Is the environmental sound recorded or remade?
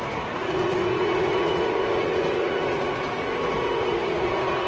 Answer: remade